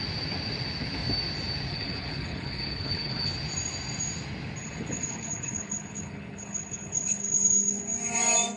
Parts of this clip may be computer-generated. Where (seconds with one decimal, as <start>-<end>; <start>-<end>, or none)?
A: 1.7-3.3; 4.6-7.8

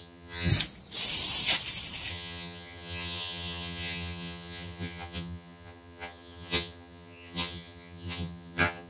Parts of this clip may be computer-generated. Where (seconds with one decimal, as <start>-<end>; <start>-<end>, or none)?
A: 0.0-0.5; 2.1-8.9

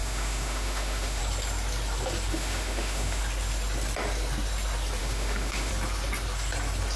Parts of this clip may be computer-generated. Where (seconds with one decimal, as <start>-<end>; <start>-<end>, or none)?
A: 0.0-1.2; 2.3-3.2; 5.0-5.7

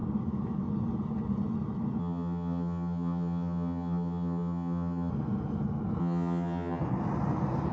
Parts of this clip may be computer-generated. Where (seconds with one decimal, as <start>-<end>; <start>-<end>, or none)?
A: 2.0-5.1; 6.0-6.8

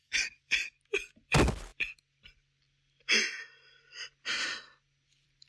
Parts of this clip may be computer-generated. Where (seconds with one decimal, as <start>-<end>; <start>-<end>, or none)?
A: none